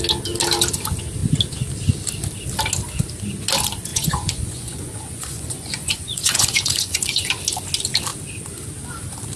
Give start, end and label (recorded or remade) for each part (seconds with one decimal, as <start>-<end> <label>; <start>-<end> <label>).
0.0-3.9 recorded; 3.9-7.3 remade; 7.3-9.4 recorded